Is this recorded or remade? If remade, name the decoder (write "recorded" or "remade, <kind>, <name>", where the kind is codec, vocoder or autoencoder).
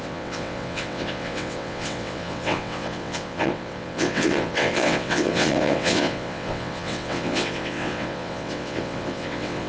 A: remade, vocoder, WaveNeXt